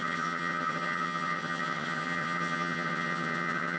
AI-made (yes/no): yes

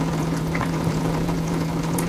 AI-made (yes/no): yes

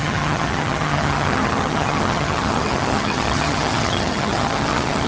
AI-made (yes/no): yes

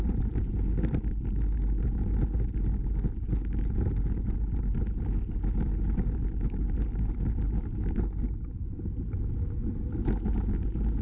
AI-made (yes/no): no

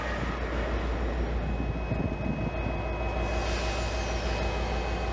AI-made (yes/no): no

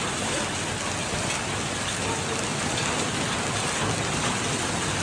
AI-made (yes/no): no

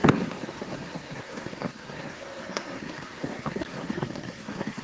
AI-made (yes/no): yes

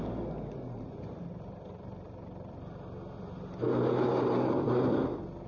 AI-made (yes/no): no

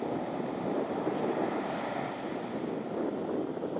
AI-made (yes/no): no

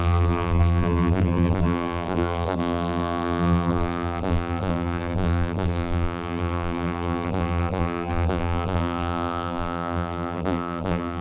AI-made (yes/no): yes